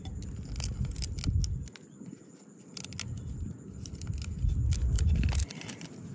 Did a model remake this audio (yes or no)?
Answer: no